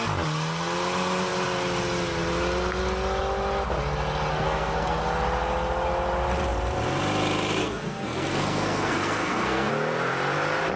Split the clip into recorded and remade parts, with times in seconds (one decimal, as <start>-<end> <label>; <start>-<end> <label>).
0.0-4.3 recorded; 4.3-5.0 remade; 5.0-7.6 recorded; 7.6-9.7 remade; 9.7-10.8 recorded